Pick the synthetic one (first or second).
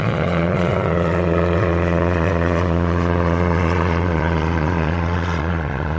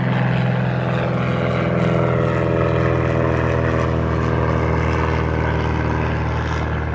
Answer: first